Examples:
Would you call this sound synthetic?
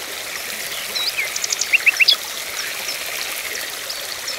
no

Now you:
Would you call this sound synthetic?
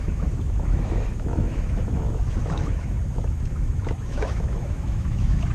yes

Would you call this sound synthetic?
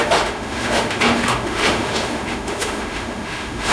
yes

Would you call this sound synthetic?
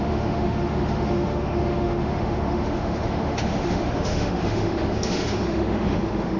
yes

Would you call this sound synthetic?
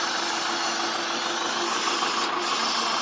no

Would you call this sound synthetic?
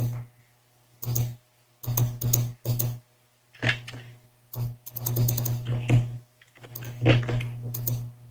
no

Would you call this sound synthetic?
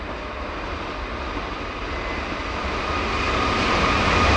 no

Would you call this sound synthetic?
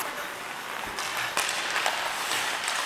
no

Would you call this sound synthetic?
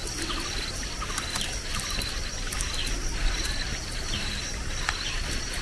no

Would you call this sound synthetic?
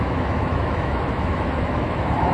yes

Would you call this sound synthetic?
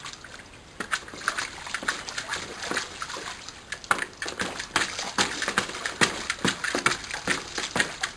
no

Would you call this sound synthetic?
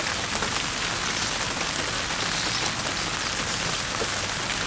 no